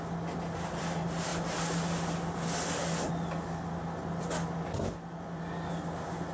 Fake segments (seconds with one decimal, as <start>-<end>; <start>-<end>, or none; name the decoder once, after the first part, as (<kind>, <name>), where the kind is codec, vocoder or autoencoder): none